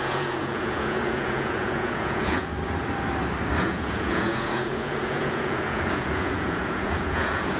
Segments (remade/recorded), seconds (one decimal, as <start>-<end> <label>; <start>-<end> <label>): 0.0-2.5 remade; 2.5-3.6 recorded; 3.6-7.6 remade

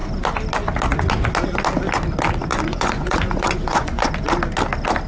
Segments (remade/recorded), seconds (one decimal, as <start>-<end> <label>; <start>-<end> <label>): 0.0-2.5 recorded; 2.5-4.1 remade; 4.1-5.1 recorded